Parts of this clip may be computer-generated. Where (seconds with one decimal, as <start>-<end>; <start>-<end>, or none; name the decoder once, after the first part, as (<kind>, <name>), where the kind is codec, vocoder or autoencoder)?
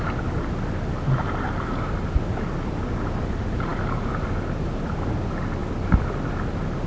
none